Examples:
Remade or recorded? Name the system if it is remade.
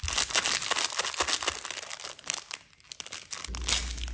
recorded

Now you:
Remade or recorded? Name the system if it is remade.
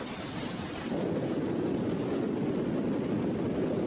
recorded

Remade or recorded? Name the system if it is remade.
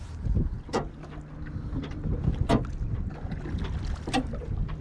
recorded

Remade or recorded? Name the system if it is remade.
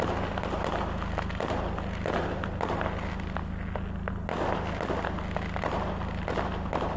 recorded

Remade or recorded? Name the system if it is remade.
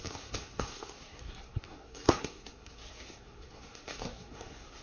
remade, codec, SNAC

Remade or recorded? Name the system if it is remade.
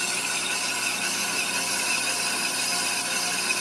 recorded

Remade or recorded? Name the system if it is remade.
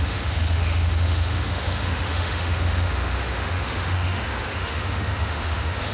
remade, autoencoder, DAC-VAE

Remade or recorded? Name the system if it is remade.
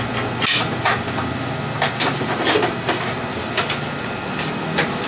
recorded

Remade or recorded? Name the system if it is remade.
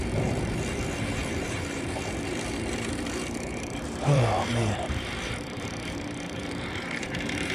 remade, vocoder, BigVGAN v2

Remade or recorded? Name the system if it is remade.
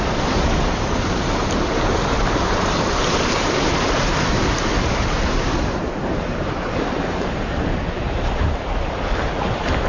remade, vocoder, BigVGAN v2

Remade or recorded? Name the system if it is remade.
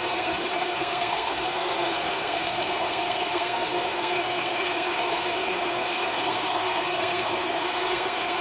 remade, codec, SNAC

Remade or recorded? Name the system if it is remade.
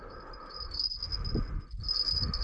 recorded